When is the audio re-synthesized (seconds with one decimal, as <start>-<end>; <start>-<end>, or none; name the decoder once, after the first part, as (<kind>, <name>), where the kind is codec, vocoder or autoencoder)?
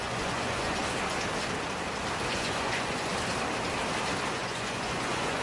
0.0-0.8 (vocoder, Vocos); 2.3-3.1; 4.3-5.4